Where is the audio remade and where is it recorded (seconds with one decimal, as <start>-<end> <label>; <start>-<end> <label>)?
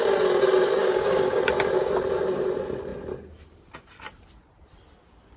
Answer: 0.0-0.8 recorded; 0.8-1.4 remade; 1.4-5.4 recorded